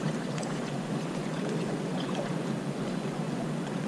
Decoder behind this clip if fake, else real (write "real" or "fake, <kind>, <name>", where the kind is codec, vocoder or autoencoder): fake, vocoder, Vocos